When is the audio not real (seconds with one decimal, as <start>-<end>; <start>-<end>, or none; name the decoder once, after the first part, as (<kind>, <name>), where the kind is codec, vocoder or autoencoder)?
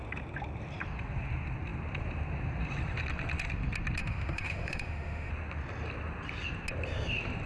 4.0-5.3 (autoencoder, DAC-VAE)